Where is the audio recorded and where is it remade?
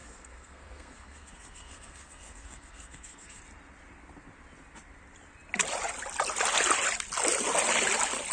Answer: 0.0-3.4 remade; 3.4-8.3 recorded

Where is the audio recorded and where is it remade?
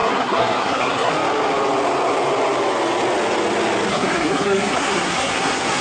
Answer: 0.0-1.1 remade; 1.1-3.9 recorded; 3.9-5.8 remade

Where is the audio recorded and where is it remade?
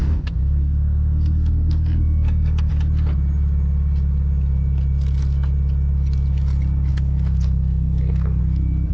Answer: 0.0-2.7 remade; 2.7-6.9 recorded; 6.9-8.4 remade; 8.4-8.9 recorded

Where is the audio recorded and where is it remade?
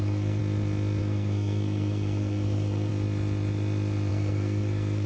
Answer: 0.0-0.4 remade; 0.4-1.0 recorded; 1.0-2.9 remade; 2.9-4.1 recorded; 4.1-5.1 remade